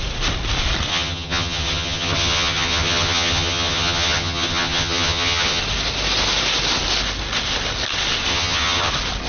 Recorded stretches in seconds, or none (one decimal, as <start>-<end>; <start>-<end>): 0.0-0.9; 5.6-8.3; 8.9-9.3